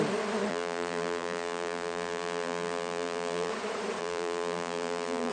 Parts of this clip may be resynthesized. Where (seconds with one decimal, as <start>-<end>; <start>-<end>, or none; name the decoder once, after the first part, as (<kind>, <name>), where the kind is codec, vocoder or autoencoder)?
0.5-3.5 (vocoder, BigVGAN v2); 4.0-5.3